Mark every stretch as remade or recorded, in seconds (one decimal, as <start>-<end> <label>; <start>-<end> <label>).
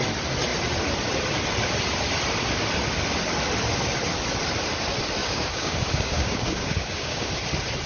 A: 0.0-5.2 recorded; 5.2-7.3 remade; 7.3-7.9 recorded